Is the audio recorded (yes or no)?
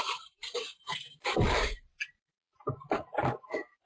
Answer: no